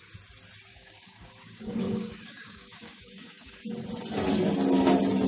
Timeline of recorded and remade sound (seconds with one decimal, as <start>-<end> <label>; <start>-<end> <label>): 0.0-0.7 recorded; 0.7-3.6 remade; 3.6-5.3 recorded